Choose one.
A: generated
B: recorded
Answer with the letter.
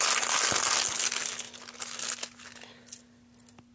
B